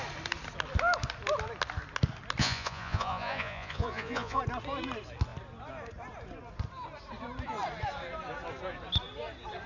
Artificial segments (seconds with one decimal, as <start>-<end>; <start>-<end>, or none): 2.4-4.4